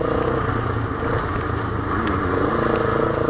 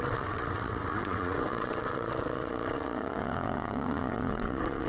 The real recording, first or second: first